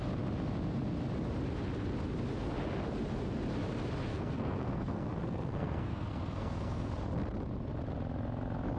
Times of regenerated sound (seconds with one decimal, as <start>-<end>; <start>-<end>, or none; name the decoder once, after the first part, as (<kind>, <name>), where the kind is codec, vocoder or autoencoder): 4.1-6.9 (codec, SNAC)